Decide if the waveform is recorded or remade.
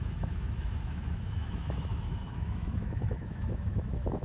remade